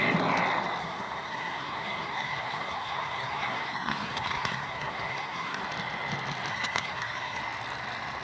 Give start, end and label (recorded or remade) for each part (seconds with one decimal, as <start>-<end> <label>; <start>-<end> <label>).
0.0-0.8 recorded; 0.8-5.6 remade; 5.6-6.5 recorded; 6.5-7.4 remade; 7.4-8.2 recorded